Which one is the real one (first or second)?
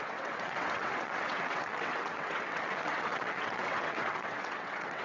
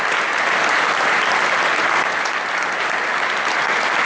second